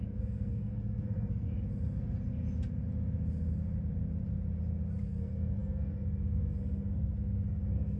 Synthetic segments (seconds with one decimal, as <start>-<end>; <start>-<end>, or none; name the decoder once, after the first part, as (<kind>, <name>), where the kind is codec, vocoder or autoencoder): 0.0-1.5 (codec, SNAC); 5.0-8.0